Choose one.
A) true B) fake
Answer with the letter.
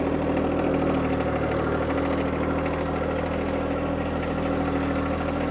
A